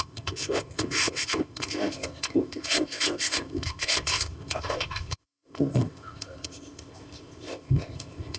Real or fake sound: fake